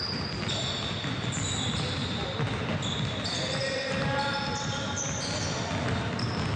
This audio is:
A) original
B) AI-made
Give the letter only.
A